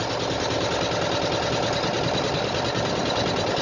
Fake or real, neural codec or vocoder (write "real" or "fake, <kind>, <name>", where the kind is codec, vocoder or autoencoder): real